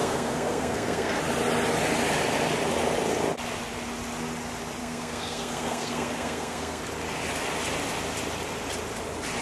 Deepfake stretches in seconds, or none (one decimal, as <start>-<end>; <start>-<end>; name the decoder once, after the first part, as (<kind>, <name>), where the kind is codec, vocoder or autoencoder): 0.0-1.2 (codec, SNAC); 4.8-6.8